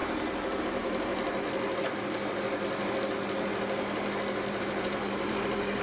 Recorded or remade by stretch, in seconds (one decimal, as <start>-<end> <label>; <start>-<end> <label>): 0.0-0.6 recorded; 0.6-1.1 remade; 1.1-4.6 recorded; 4.6-5.8 remade